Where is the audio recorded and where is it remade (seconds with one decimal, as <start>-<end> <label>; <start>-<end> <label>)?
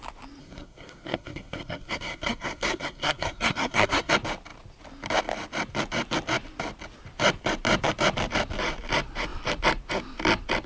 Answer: 0.0-0.4 recorded; 0.4-4.1 remade; 4.1-10.7 recorded